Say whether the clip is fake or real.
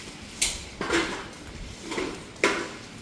real